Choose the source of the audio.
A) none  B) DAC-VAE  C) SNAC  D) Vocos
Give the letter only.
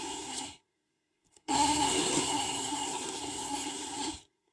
C